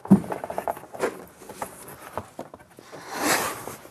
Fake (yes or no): no